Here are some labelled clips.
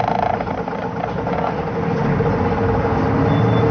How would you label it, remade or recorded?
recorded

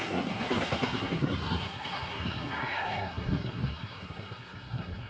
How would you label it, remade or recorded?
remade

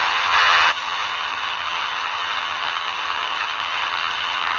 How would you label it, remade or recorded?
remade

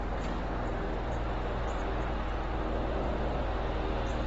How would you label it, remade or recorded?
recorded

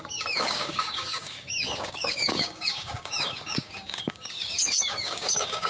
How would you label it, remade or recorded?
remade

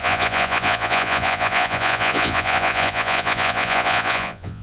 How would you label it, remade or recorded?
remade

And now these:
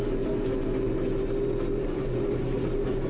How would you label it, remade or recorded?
recorded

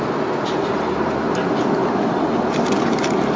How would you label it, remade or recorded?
recorded